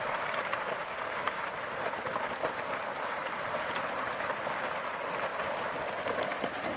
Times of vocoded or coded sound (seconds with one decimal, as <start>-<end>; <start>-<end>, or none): 0.8-2.2; 3.2-4.1; 5.3-6.3